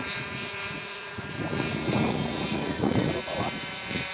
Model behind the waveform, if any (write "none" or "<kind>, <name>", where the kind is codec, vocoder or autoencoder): vocoder, Vocos